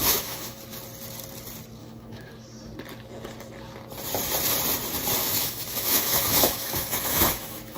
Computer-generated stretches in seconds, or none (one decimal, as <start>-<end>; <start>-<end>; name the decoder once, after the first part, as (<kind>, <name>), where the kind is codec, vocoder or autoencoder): 0.0-0.6 (autoencoder, DAC-VAE); 1.8-2.3; 5.2-7.8